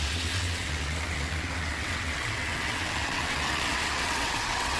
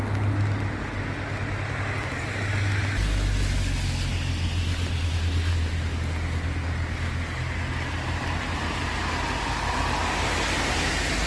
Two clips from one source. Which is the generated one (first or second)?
first